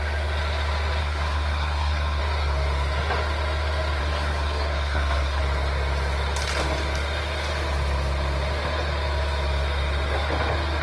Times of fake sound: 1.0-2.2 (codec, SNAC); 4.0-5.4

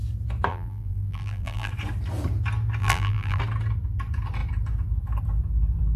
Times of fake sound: 0.5-1.7 (vocoder, BigVGAN v2); 2.8-3.4